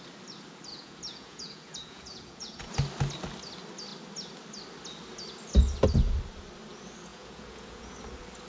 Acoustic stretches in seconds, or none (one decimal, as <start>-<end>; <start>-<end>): 0.0-0.7; 2.7-7.1; 7.9-8.5